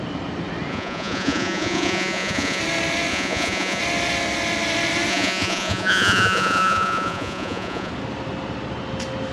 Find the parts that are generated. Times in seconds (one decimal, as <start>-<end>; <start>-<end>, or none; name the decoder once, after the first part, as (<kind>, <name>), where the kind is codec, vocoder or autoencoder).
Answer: 0.7-2.6 (vocoder, Vocos); 3.1-3.8; 5.1-7.9